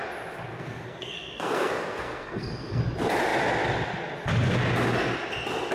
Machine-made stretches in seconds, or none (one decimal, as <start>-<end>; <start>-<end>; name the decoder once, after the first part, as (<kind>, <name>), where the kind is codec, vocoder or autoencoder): 0.5-2.8 (codec, SNAC)